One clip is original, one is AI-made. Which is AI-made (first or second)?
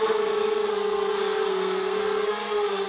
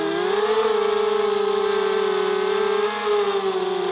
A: first